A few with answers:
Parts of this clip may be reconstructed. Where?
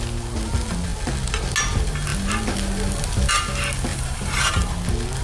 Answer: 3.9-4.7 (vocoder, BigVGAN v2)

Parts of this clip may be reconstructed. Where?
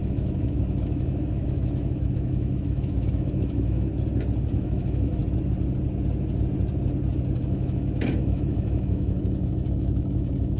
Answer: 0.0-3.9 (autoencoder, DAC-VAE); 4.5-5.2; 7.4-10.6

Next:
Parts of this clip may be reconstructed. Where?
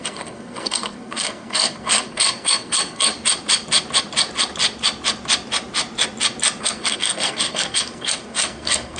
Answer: 0.0-3.1 (codec, SNAC); 6.6-9.0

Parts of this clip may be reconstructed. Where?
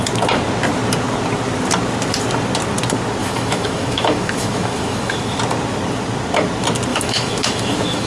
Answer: 3.2-5.4 (autoencoder, DAC-VAE); 6.9-8.1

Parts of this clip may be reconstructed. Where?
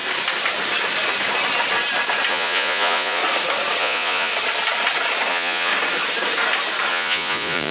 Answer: 2.3-3.2 (vocoder, Vocos); 3.8-4.3; 5.3-5.7; 6.9-7.7